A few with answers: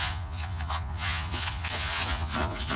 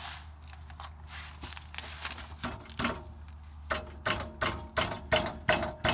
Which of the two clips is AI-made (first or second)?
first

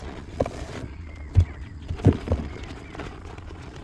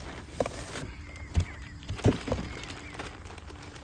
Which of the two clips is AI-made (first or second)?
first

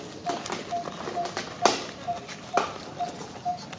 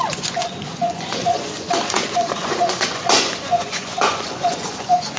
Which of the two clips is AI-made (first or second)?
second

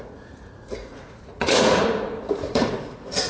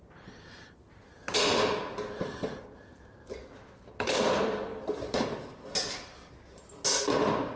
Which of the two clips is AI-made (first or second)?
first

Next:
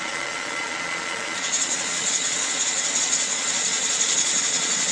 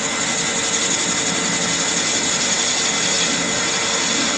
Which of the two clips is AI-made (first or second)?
first